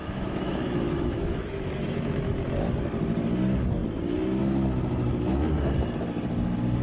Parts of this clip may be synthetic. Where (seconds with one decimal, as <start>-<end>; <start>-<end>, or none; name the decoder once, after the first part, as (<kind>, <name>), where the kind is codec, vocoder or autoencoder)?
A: 0.0-2.7 (autoencoder, DAC-VAE)